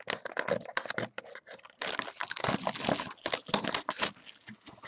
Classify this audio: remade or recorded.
recorded